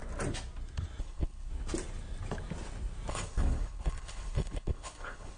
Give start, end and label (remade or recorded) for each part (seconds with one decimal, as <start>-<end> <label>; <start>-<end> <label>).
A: 0.0-1.0 recorded; 1.0-1.5 remade; 1.5-3.1 recorded; 3.1-5.4 remade